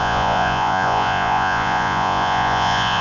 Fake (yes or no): yes